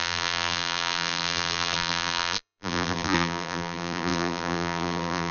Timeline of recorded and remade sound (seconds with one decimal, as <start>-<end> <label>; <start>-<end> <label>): 0.0-5.3 remade